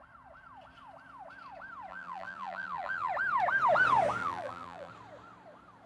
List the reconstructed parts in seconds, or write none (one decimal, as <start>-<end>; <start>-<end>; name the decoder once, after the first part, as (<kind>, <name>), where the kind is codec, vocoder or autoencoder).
1.9-3.1 (vocoder, BigVGAN v2); 4.2-4.9